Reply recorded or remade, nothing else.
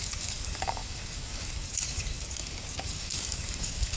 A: remade